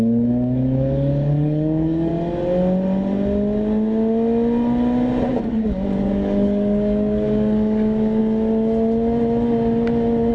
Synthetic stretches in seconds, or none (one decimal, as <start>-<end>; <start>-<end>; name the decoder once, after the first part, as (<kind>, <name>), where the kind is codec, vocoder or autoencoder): 0.0-2.1 (codec, DAC); 5.4-8.2

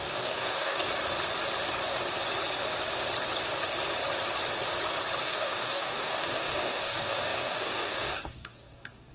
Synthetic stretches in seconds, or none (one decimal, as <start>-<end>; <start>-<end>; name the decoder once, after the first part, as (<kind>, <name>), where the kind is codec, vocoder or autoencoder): 0.0-0.8 (codec, DAC); 5.2-9.1